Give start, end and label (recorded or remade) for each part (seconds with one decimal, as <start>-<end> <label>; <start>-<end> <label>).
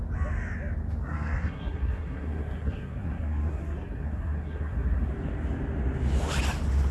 0.0-1.0 recorded; 1.0-5.1 remade; 5.1-6.9 recorded